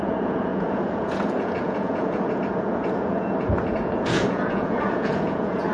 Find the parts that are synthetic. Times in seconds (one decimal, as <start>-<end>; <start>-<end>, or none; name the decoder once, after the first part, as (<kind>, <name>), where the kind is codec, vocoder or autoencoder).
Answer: 0.0-5.7 (vocoder, Vocos)